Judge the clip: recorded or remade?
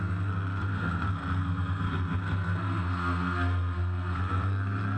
remade